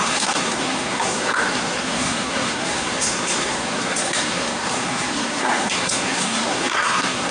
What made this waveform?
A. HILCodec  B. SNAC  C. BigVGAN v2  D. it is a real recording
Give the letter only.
B